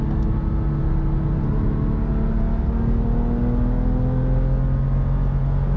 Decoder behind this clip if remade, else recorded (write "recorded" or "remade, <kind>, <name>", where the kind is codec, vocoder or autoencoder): recorded